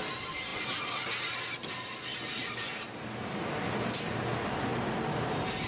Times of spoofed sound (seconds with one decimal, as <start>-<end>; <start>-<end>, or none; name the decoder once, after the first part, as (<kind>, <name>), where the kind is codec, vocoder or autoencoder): 2.1-2.6 (vocoder, BigVGAN v2); 4.7-5.7